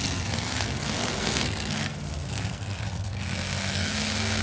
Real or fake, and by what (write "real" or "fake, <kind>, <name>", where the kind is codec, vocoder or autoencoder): fake, codec, SNAC